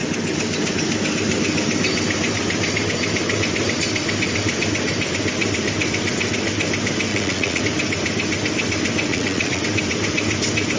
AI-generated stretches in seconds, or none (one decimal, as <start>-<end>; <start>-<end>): 7.1-7.6; 9.1-9.6